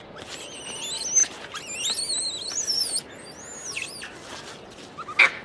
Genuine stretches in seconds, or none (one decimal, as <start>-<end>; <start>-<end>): 0.0-5.4